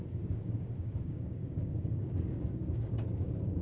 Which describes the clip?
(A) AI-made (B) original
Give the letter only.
A